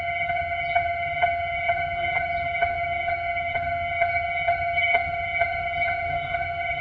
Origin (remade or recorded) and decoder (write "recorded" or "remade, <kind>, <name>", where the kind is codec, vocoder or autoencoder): remade, vocoder, HiFi-GAN